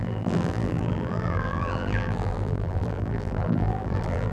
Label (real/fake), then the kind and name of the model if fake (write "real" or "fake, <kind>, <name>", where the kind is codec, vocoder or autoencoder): fake, vocoder, BigVGAN v2